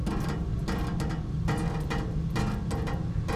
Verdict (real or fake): real